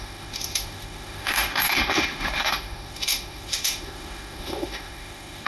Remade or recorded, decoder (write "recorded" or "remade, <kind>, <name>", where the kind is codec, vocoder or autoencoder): remade, autoencoder, DAC-VAE